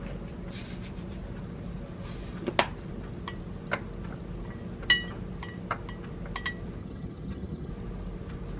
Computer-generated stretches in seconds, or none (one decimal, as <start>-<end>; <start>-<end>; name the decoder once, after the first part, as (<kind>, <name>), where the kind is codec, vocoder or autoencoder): 6.8-7.7 (vocoder, HiFi-GAN)